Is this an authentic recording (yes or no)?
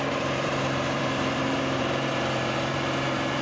no